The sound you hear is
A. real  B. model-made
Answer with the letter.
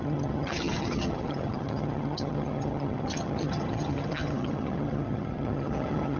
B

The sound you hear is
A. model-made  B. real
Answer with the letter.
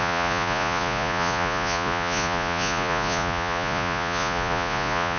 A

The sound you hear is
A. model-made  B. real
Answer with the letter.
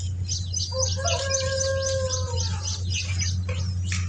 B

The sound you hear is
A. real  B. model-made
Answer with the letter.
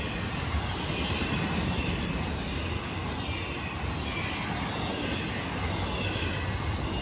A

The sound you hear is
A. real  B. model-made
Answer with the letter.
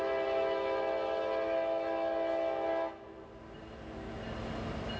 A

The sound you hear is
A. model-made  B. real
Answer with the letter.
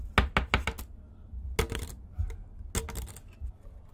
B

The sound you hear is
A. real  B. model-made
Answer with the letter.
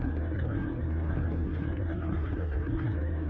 B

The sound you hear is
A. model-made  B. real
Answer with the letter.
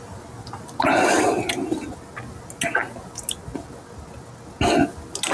B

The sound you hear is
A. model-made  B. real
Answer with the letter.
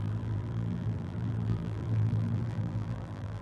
A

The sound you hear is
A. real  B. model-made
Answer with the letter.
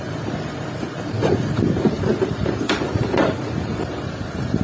B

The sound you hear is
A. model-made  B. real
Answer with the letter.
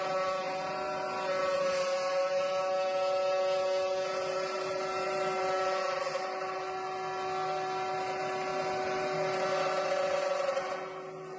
B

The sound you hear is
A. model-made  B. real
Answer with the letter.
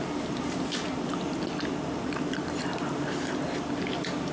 B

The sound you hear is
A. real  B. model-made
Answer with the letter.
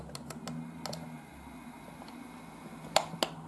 A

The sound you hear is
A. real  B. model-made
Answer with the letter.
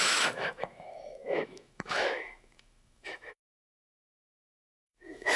B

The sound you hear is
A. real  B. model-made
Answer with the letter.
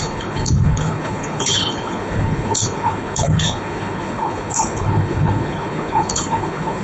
B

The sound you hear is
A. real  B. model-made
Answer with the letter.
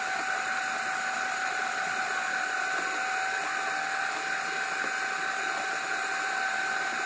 A